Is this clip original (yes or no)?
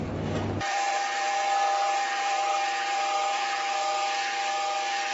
no